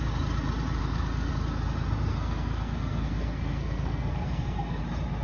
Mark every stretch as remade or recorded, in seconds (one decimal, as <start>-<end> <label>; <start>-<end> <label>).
0.0-0.8 recorded; 0.8-1.3 remade; 1.3-2.1 recorded; 2.1-4.8 remade; 4.8-5.2 recorded

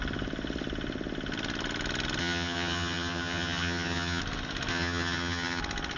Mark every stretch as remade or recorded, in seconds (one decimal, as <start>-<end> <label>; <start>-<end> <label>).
0.0-2.2 recorded; 2.2-4.2 remade; 4.2-4.7 recorded; 4.7-5.6 remade; 5.6-6.0 recorded

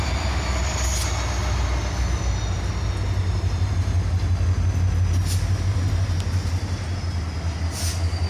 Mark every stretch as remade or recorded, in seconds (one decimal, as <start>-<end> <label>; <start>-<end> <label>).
0.0-8.3 recorded